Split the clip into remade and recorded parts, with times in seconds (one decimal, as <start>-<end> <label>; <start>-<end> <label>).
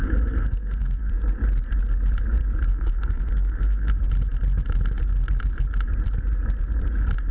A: 0.0-1.1 remade; 1.1-2.7 recorded; 2.7-3.9 remade; 3.9-7.3 recorded